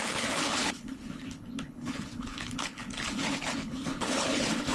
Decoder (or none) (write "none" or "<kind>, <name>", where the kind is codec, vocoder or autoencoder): codec, HILCodec